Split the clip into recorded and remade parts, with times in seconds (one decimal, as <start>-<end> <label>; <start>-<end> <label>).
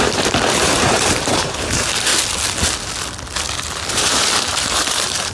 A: 0.0-2.1 remade; 2.1-3.9 recorded; 3.9-5.3 remade